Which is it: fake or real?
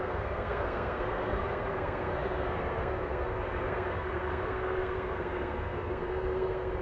fake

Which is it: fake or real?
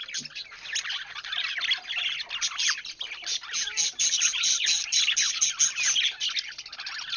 real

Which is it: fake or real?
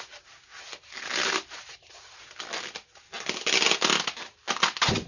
real